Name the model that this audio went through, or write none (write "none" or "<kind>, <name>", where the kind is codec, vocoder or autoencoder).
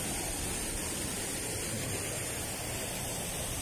none